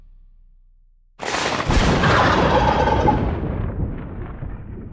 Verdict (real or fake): real